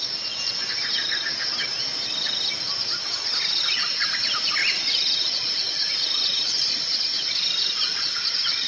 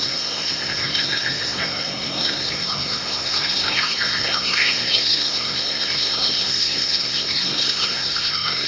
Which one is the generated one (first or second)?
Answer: second